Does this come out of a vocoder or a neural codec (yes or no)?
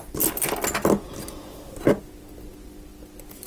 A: no